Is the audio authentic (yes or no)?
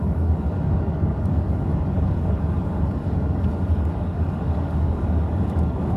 no